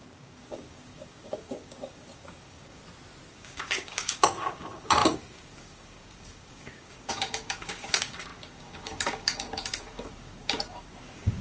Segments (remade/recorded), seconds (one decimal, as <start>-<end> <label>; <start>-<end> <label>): 0.0-2.8 remade; 2.8-3.3 recorded; 3.3-11.4 remade